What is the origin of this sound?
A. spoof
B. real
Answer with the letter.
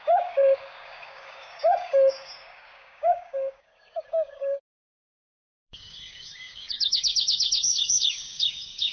A